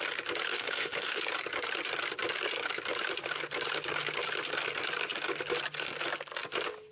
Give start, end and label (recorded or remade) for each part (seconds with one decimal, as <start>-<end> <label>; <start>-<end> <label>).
0.0-0.5 recorded; 0.5-1.2 remade; 1.2-6.9 recorded